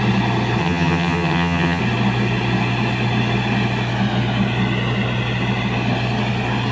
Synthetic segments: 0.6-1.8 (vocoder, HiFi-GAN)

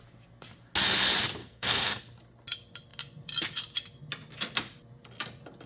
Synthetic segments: 1.4-2.0 (codec, SNAC)

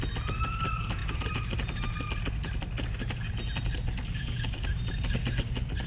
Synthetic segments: none

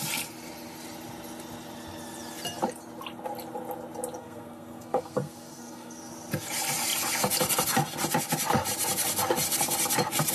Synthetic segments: 4.2-6.1 (codec, SNAC)

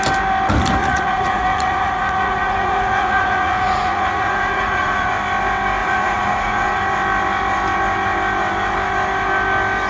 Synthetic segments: 0.8-5.1 (vocoder, Vocos); 5.8-6.8

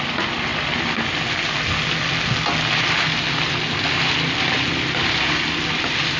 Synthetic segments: none

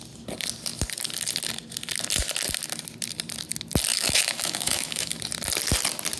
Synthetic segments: 3.9-5.2 (autoencoder, DAC-VAE)

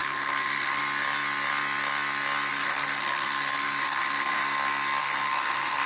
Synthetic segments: 0.0-0.8 (codec, SNAC); 2.5-4.4; 5.0-5.9